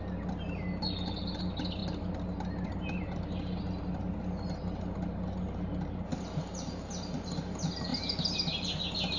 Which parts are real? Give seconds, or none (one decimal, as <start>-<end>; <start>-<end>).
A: 0.0-9.2